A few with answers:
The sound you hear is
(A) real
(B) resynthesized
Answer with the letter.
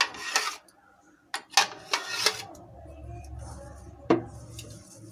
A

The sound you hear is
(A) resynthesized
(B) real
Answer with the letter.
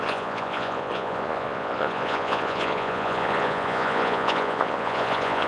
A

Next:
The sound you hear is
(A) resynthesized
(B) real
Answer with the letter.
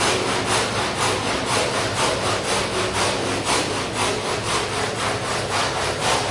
B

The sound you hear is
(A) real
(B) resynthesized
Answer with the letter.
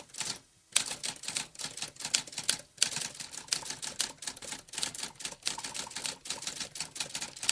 A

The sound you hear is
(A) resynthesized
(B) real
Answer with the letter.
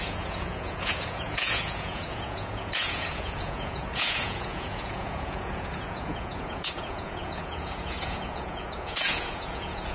A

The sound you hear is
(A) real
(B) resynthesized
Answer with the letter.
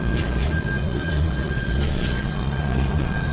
B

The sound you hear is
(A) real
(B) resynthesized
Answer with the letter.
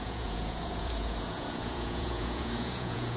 B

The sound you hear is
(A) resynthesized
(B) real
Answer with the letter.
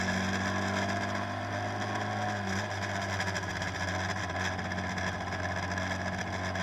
B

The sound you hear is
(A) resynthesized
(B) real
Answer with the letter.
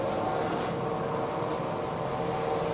B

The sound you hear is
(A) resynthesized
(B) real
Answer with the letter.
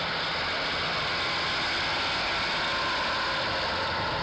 B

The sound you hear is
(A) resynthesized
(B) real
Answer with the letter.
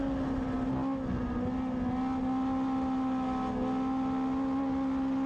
B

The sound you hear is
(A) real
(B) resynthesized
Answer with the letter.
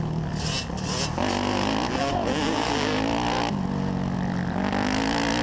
A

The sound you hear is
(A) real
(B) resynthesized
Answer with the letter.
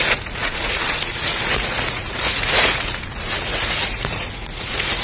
B